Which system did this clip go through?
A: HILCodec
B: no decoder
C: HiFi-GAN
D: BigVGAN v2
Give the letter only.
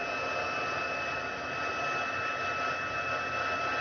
B